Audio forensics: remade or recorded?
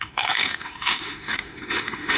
remade